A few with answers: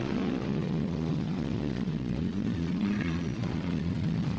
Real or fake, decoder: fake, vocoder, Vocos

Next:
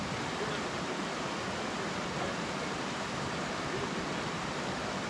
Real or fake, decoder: real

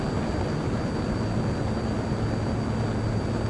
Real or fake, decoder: real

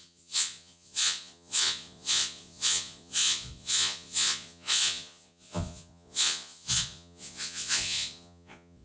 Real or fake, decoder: fake, vocoder, Vocos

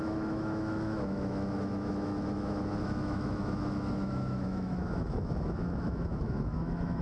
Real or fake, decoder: fake, autoencoder, DAC-VAE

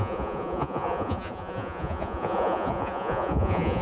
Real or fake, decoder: fake, vocoder, Vocos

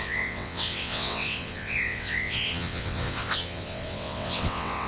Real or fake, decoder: fake, vocoder, WaveNeXt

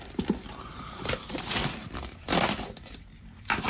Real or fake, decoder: fake, vocoder, BigVGAN v2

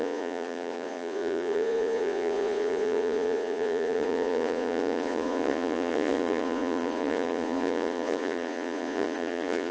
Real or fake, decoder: fake, vocoder, Vocos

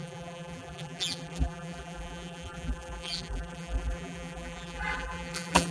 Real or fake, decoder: fake, vocoder, BigVGAN v2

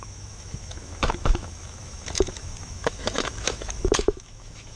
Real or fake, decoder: fake, autoencoder, DAC-VAE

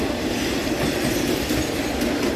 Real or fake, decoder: real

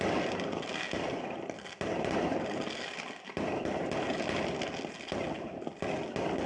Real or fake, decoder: real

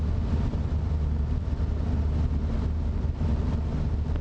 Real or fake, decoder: real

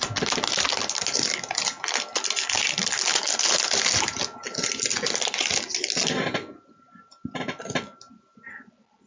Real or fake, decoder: real